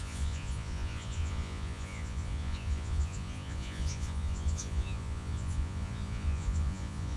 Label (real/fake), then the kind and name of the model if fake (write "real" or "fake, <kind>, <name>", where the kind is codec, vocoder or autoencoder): fake, vocoder, Vocos